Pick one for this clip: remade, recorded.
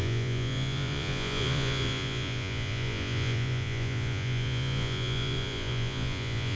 remade